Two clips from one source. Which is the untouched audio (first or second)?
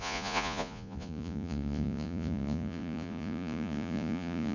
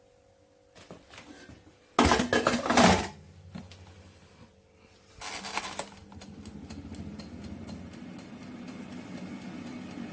second